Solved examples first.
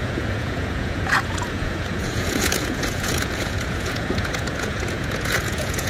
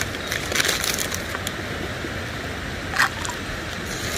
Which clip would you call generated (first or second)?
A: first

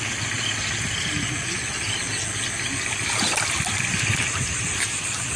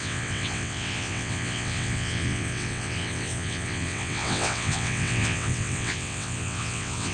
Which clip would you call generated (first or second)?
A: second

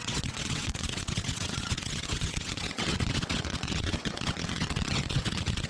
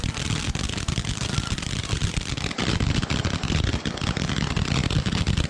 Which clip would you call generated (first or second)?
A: first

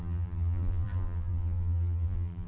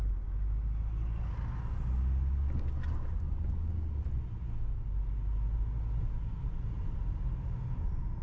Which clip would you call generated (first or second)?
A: first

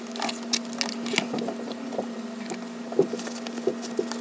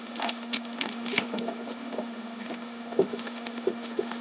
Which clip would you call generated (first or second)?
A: second